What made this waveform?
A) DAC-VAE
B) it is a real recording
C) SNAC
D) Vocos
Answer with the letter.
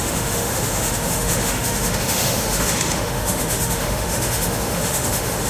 A